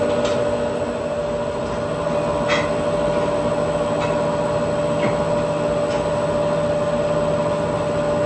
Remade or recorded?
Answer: recorded